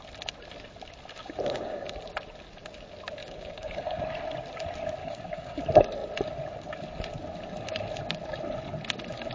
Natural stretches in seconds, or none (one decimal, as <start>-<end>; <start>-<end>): 0.0-1.2; 1.9-3.2; 4.0-5.0; 5.6-9.3